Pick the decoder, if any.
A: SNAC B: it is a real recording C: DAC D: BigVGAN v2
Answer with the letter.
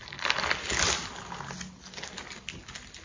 B